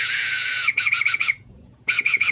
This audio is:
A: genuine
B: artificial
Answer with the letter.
B